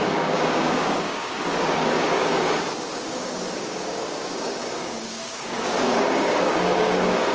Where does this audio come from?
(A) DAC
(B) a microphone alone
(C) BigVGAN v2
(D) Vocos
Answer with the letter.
A